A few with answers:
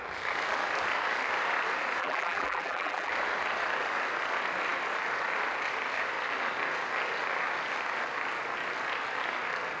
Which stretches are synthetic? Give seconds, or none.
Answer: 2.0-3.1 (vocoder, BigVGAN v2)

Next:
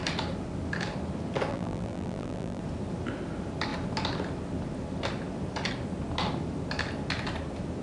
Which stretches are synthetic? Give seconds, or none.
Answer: 1.5-2.6 (vocoder, BigVGAN v2)

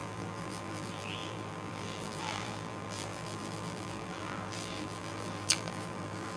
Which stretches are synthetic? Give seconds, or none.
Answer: 0.0-6.4 (vocoder, BigVGAN v2)

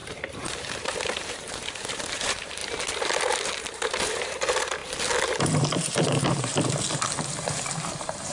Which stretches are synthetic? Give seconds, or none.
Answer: 0.0-2.6 (vocoder, BigVGAN v2); 3.2-4.8; 5.3-6.5; 7.8-8.3

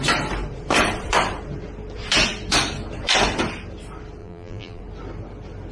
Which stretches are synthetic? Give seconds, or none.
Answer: 4.2-4.8 (vocoder, BigVGAN v2)